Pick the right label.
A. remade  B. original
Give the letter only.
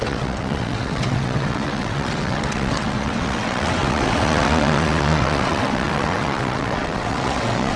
A